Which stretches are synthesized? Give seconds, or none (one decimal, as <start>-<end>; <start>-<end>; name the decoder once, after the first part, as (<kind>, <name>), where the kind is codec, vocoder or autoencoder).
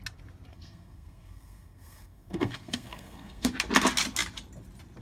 0.5-3.5 (codec, SNAC)